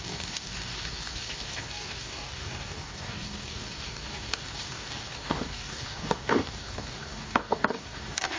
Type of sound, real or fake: fake